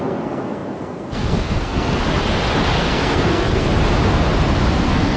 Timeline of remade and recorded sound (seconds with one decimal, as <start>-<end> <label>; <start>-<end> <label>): 0.0-2.0 remade; 2.0-2.7 recorded; 2.7-3.7 remade; 3.7-4.7 recorded; 4.7-5.2 remade